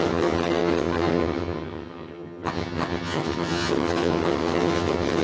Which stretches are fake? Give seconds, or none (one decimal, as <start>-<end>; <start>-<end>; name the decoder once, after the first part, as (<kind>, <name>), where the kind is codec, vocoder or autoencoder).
0.0-5.2 (vocoder, HiFi-GAN)